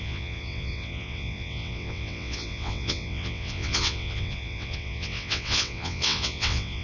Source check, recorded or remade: remade